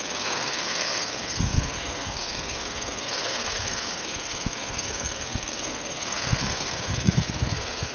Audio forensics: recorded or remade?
remade